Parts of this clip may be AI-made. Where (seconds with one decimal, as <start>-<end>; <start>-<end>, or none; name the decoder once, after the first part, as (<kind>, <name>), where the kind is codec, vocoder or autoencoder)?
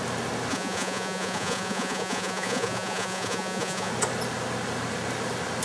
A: 0.5-3.9 (vocoder, Vocos)